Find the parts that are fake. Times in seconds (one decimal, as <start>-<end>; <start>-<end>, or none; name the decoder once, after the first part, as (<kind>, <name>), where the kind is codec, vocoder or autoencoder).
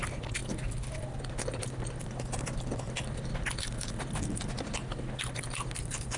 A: none